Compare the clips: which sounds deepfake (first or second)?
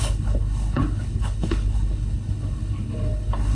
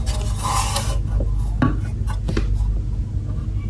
first